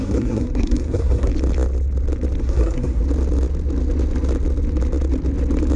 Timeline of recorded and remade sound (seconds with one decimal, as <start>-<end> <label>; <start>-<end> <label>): 0.0-1.3 remade; 1.3-2.4 recorded; 2.4-3.0 remade; 3.0-5.8 recorded